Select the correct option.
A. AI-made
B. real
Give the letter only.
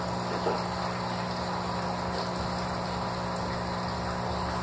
B